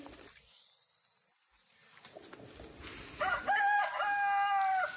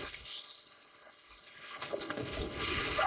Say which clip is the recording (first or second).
first